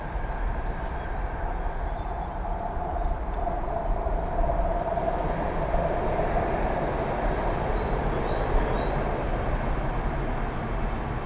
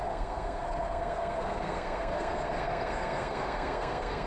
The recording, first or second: first